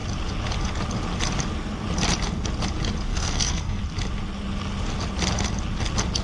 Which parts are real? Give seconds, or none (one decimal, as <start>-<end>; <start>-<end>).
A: 0.0-3.1; 3.8-6.2